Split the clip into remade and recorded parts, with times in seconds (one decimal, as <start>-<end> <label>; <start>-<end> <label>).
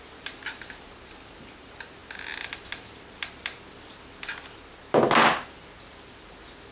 0.0-6.7 recorded